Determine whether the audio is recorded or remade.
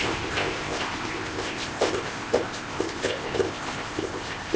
remade